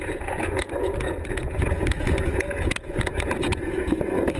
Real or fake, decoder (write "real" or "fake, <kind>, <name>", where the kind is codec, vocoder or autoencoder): fake, vocoder, Vocos